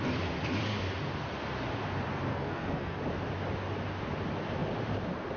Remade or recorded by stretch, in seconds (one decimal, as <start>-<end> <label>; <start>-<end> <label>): 0.0-2.3 recorded; 2.3-3.0 remade; 3.0-5.4 recorded